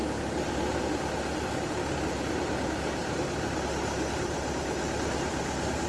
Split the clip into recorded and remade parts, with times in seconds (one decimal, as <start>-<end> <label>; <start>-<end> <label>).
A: 0.0-5.9 recorded